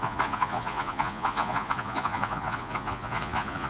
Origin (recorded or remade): remade